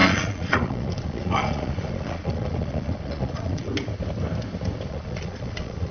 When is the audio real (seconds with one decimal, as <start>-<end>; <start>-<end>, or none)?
3.7-4.9